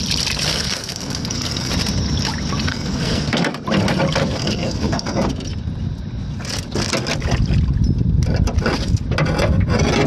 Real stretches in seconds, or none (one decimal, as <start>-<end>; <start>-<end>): 0.0-0.5; 1.7-2.7; 3.5-4.2; 5.3-10.1